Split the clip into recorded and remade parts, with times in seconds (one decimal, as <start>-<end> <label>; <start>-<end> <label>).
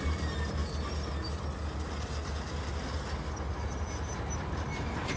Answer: 0.0-5.2 recorded